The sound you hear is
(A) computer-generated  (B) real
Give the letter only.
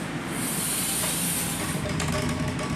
B